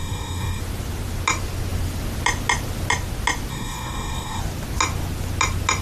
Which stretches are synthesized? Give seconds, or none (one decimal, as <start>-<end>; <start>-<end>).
0.0-0.6; 3.5-4.4